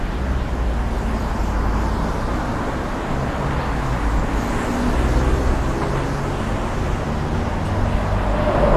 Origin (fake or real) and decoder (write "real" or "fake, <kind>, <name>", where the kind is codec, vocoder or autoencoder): real